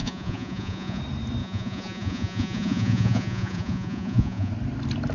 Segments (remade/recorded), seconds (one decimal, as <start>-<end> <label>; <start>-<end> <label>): 0.0-1.0 remade; 1.0-1.4 recorded; 1.4-4.5 remade; 4.5-5.1 recorded